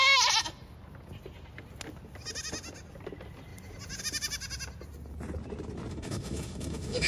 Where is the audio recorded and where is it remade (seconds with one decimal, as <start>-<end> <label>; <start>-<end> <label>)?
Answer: 0.0-5.9 recorded; 5.9-7.1 remade